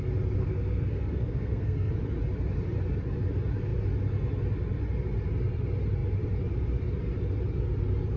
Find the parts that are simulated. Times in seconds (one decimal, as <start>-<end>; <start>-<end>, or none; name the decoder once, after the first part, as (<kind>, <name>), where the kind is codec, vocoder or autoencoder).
0.4-1.9 (codec, SNAC)

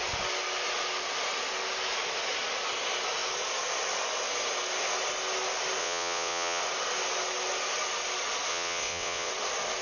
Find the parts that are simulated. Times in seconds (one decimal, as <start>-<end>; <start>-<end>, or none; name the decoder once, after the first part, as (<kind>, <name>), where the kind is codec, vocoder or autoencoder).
5.8-6.6 (vocoder, WaveNeXt); 8.5-9.3

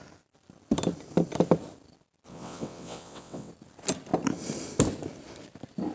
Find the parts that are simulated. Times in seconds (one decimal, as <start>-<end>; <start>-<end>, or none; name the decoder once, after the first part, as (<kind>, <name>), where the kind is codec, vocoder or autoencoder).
2.3-3.5 (vocoder, WaveNeXt)

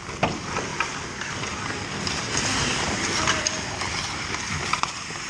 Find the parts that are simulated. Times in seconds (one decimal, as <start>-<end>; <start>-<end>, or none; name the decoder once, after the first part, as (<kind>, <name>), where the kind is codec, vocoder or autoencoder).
none

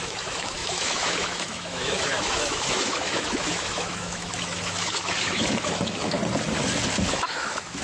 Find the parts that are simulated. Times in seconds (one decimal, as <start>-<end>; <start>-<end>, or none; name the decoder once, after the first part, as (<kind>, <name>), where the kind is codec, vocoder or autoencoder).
0.0-6.2 (autoencoder, DAC-VAE); 7.1-7.8

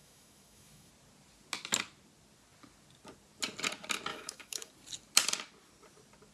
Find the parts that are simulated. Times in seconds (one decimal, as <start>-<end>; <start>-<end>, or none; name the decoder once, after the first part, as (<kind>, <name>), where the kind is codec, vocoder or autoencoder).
0.0-0.9 (autoencoder, DAC-VAE); 4.1-4.7

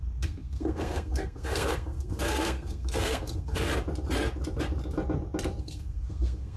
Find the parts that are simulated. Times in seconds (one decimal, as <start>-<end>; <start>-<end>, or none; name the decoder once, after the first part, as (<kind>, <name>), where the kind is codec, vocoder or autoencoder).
0.0-3.7 (codec, SNAC); 5.6-6.6

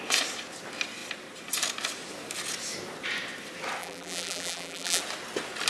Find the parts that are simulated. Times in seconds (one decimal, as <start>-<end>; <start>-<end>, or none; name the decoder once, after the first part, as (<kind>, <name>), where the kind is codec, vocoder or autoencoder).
3.8-5.0 (vocoder, BigVGAN v2)